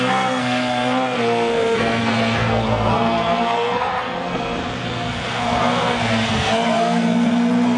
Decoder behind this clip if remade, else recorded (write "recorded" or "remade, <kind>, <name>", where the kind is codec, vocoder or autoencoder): remade, codec, SNAC